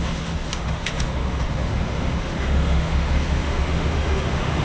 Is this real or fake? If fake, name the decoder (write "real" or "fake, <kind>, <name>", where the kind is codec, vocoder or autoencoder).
fake, autoencoder, DAC-VAE